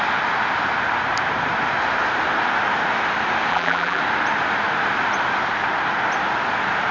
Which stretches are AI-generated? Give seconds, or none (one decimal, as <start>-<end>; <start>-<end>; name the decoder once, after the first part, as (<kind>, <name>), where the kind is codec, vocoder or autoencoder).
3.5-4.0 (vocoder, BigVGAN v2)